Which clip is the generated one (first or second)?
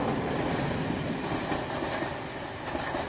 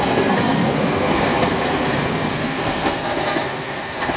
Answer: second